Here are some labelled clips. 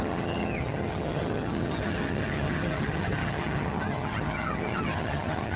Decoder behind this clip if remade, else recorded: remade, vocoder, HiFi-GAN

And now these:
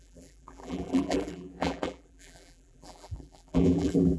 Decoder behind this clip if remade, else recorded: remade, vocoder, BigVGAN v2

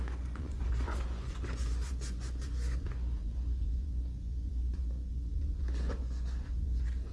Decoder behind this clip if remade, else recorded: remade, vocoder, Vocos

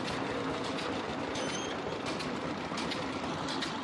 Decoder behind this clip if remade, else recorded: recorded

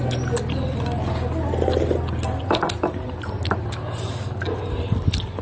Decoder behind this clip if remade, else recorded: recorded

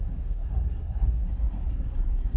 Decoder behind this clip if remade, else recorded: remade, codec, SNAC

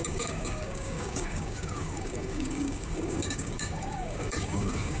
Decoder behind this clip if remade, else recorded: remade, codec, DAC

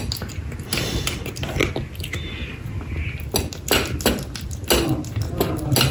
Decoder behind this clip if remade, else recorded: recorded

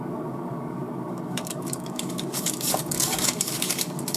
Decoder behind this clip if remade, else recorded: remade, codec, DAC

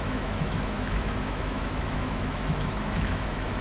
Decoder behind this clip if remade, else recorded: remade, autoencoder, DAC-VAE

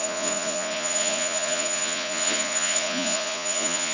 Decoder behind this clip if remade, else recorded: remade, vocoder, Vocos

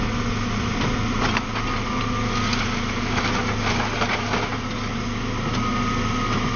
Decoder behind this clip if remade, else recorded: recorded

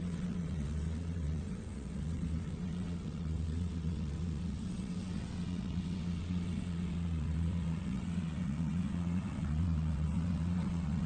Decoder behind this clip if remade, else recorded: remade, vocoder, WaveNeXt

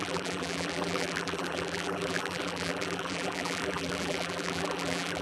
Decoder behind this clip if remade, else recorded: remade, vocoder, BigVGAN v2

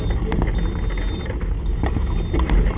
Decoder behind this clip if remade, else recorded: recorded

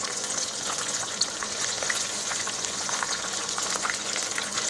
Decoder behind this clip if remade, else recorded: remade, vocoder, Vocos